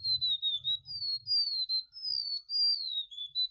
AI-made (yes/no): no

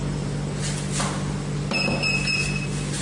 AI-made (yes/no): no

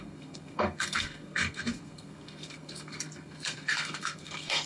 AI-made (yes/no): yes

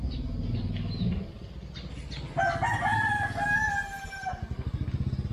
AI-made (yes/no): no